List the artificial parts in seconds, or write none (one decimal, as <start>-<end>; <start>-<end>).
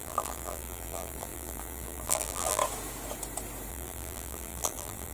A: 0.0-2.6; 3.7-5.1